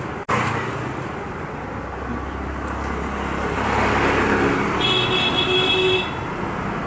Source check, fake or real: real